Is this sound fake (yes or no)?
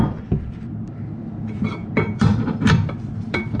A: yes